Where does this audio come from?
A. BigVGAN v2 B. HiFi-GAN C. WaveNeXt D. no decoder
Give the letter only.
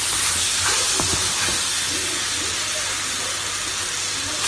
D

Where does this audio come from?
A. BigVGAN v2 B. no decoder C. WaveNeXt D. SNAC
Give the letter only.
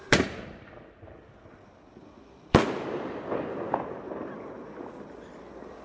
B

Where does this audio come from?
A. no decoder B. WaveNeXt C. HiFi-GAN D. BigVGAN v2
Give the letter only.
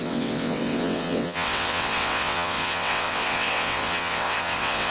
B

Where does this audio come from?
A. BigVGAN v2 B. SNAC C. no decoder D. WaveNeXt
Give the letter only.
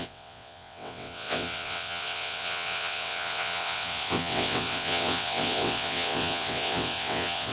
D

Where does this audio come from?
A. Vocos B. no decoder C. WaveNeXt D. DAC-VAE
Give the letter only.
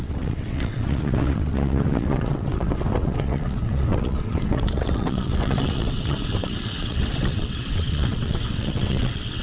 C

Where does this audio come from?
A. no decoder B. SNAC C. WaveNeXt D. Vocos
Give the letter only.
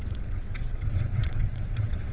C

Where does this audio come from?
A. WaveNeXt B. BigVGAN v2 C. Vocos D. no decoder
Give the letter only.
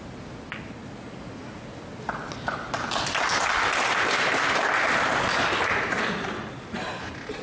D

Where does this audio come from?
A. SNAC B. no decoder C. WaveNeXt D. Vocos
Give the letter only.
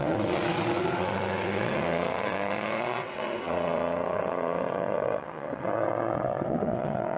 C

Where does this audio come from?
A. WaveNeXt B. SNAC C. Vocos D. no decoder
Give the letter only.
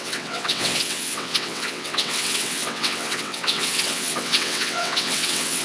A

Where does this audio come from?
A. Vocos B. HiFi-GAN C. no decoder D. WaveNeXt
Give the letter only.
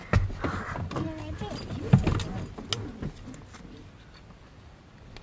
C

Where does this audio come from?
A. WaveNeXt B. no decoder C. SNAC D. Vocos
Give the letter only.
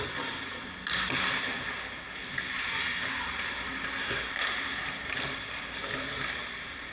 B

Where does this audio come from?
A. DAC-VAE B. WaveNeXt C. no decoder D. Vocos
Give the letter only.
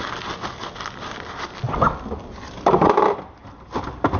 C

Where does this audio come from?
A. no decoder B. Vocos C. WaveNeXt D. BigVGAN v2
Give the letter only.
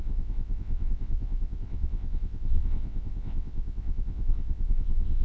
C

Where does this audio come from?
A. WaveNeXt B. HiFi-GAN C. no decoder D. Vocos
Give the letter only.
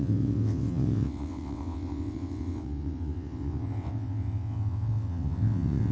A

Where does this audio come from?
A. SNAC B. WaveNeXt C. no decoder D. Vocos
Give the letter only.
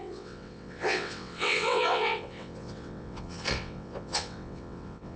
B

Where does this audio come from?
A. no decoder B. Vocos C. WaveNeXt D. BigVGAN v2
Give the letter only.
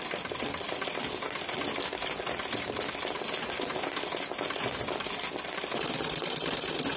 A